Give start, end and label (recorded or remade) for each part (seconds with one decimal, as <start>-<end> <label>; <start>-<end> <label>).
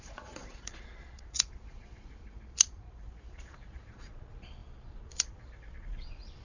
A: 0.0-6.4 remade